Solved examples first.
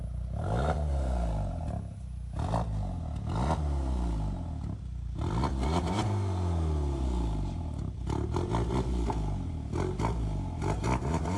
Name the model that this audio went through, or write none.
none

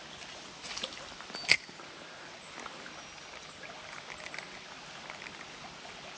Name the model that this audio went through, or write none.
none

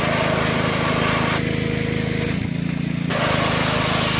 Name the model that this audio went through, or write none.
none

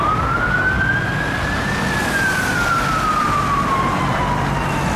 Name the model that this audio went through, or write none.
none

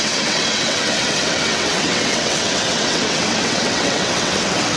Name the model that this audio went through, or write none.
vocoder, WaveNeXt